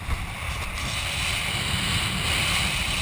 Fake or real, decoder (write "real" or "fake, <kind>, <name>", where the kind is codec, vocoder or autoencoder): fake, vocoder, BigVGAN v2